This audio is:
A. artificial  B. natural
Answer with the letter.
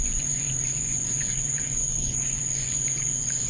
A